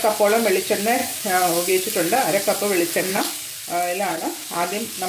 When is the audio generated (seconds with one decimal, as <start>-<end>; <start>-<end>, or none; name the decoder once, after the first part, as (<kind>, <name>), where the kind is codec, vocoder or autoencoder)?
1.0-1.7 (codec, DAC); 3.1-3.6; 4.1-5.1